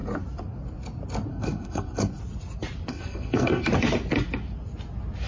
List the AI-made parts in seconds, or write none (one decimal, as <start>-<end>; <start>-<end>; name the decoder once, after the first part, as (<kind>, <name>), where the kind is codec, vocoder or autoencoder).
1.3-2.2 (codec, SNAC); 2.9-3.7